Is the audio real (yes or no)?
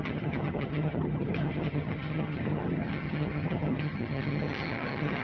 no